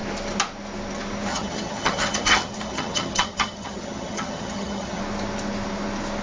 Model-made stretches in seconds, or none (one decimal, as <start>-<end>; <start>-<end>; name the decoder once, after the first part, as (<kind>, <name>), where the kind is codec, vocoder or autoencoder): 1.3-5.0 (vocoder, HiFi-GAN)